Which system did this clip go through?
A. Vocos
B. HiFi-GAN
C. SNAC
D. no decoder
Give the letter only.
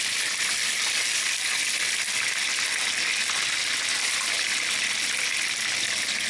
D